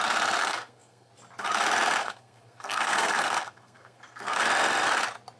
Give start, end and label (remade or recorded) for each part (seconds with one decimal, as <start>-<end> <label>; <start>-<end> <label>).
0.0-0.4 recorded; 0.4-1.1 remade; 1.1-2.0 recorded; 2.0-4.4 remade; 4.4-5.4 recorded